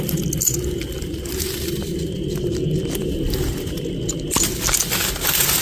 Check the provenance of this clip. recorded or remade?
recorded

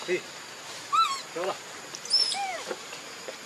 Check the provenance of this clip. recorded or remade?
recorded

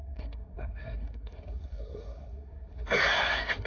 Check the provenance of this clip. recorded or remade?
remade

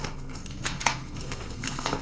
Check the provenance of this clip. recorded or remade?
remade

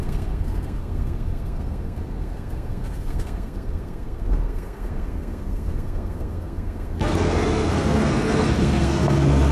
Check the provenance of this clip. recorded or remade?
remade